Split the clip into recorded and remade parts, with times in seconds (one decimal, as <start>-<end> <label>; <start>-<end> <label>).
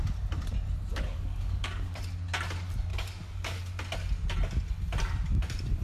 0.0-0.9 recorded; 0.9-2.0 remade; 2.0-2.9 recorded; 2.9-3.6 remade; 3.6-5.8 recorded